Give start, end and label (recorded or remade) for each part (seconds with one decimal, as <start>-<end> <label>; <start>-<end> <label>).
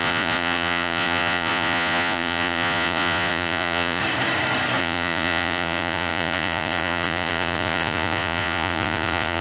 0.0-4.0 remade; 4.0-4.8 recorded; 4.8-9.4 remade